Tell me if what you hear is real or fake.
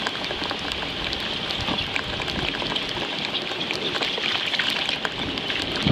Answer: real